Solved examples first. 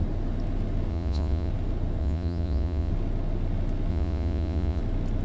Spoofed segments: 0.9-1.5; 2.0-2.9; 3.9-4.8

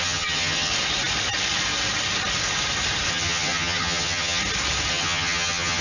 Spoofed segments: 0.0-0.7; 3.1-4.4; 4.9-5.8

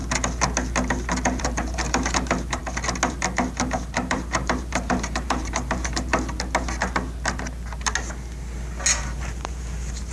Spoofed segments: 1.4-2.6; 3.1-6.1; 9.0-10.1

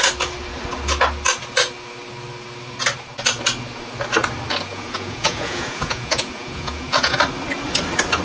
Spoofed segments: 4.7-7.2